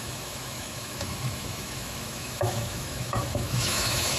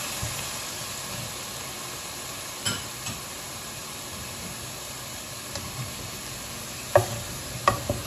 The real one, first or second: second